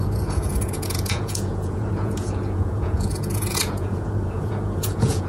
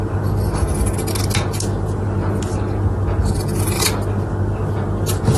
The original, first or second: second